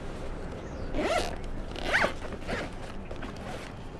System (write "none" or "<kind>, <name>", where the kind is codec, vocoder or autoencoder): none